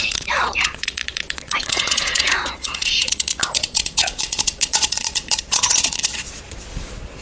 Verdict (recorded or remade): remade